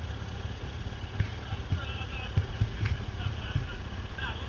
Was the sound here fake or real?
fake